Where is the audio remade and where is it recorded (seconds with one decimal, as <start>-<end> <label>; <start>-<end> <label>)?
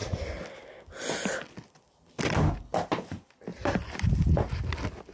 0.0-3.5 recorded; 3.5-4.3 remade; 4.3-5.1 recorded